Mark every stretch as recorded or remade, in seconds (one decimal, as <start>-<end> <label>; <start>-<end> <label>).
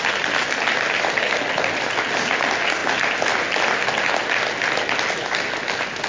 0.0-6.1 recorded